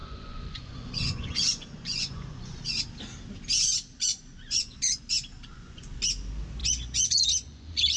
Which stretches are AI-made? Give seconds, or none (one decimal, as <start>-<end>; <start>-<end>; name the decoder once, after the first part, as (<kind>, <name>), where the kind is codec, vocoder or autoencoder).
0.0-2.6 (vocoder, Vocos); 4.1-5.1; 5.5-6.0; 6.6-8.0